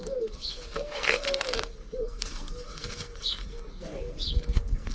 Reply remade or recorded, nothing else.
remade